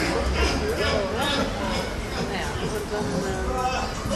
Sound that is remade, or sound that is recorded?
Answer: recorded